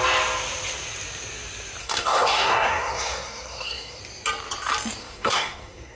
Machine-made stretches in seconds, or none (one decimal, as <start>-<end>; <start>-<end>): 1.8-4.0; 5.0-6.0